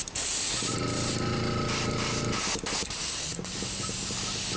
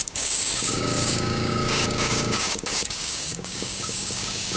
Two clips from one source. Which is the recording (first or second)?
first